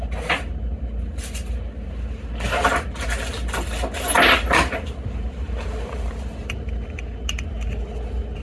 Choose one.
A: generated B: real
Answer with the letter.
B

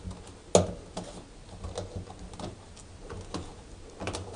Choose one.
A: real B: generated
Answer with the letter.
A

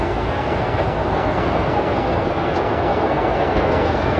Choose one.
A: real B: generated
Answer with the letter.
B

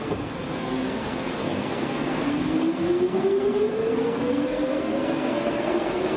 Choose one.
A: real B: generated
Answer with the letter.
B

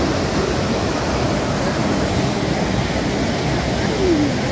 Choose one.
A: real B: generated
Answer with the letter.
A